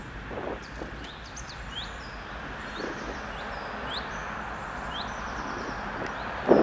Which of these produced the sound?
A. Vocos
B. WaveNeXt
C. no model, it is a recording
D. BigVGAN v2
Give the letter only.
C